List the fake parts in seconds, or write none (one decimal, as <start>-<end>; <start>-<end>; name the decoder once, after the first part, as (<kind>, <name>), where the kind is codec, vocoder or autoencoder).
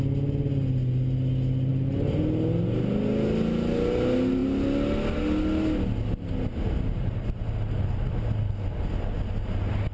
none